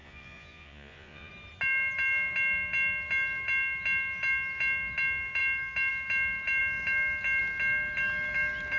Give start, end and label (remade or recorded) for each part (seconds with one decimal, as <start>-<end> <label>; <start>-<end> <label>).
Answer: 0.0-1.3 remade; 1.3-8.8 recorded